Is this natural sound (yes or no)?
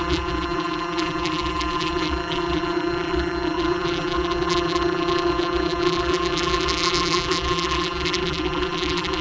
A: no